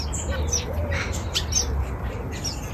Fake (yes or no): no